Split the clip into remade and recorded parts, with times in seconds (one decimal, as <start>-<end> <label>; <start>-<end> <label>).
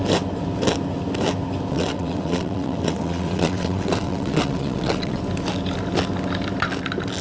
0.0-1.7 recorded; 1.7-5.2 remade; 5.2-7.2 recorded